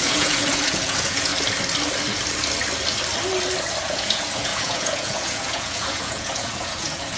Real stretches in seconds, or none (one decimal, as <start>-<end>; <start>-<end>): 1.3-3.8